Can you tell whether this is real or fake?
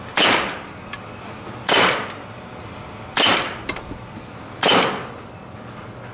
real